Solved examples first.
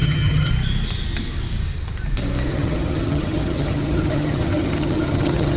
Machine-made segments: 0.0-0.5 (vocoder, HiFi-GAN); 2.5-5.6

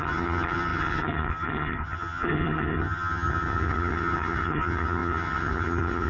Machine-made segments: 0.0-6.1 (vocoder, HiFi-GAN)

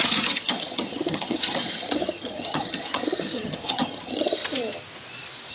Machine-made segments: 0.0-4.4 (vocoder, HiFi-GAN)

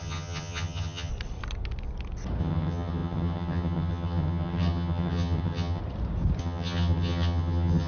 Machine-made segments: 0.0-1.1 (vocoder, HiFi-GAN); 2.4-5.8; 6.4-7.9

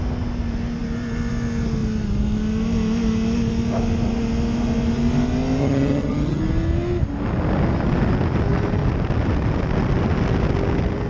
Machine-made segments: 5.6-6.4 (vocoder, HiFi-GAN)

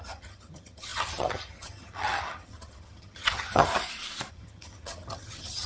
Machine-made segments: 0.0-3.7 (vocoder, HiFi-GAN); 4.3-5.7

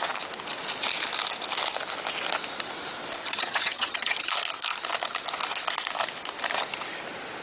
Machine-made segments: 3.2-4.3 (vocoder, HiFi-GAN)